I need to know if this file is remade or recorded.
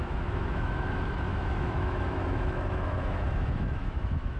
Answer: remade